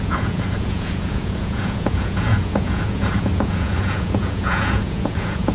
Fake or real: fake